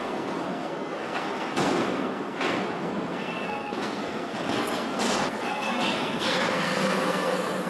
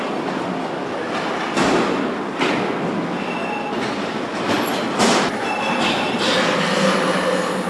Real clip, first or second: second